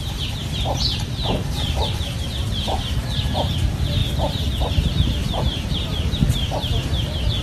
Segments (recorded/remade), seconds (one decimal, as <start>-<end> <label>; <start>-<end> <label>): 0.0-0.4 remade; 0.4-1.5 recorded; 1.5-4.0 remade; 4.0-4.7 recorded; 4.7-7.4 remade